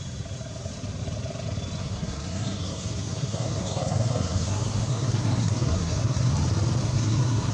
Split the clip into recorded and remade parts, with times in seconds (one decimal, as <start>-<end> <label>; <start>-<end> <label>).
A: 0.0-1.8 recorded; 1.8-6.3 remade; 6.3-6.8 recorded; 6.8-7.5 remade